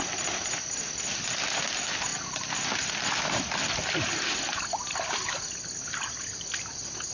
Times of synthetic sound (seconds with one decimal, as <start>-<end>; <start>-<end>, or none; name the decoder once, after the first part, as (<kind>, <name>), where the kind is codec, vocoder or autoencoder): none